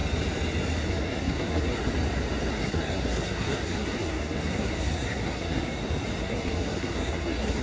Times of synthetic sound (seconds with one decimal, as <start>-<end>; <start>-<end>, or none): 0.9-1.9; 2.5-5.7; 6.2-7.6